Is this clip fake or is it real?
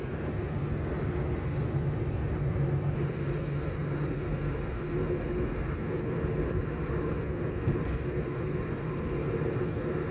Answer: real